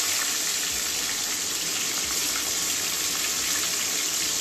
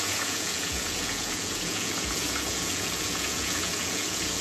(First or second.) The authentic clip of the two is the first